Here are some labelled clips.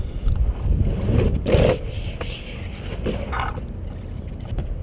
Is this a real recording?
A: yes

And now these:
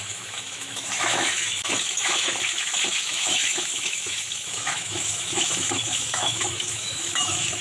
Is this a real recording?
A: no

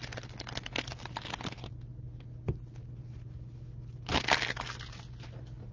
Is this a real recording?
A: yes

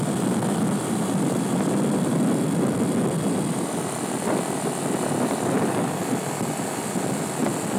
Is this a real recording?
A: yes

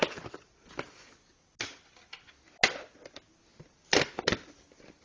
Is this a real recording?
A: yes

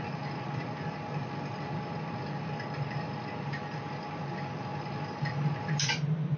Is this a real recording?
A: yes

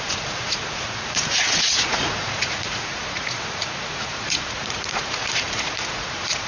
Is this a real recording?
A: no